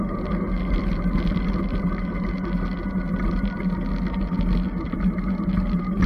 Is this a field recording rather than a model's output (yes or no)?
yes